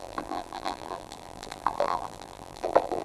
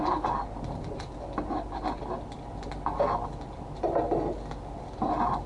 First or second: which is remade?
first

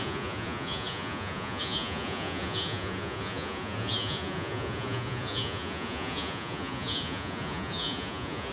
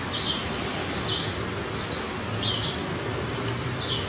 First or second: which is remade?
first